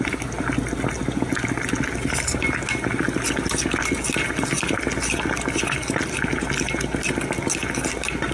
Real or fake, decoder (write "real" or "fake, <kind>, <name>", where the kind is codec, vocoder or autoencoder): real